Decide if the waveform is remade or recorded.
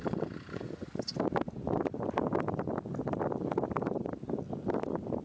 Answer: recorded